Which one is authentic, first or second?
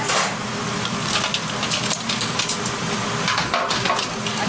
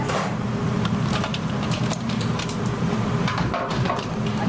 first